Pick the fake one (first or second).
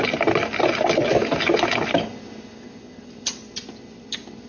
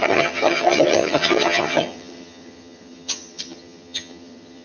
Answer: second